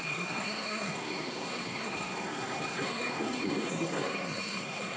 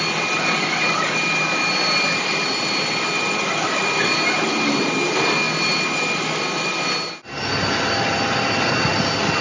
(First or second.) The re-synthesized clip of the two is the first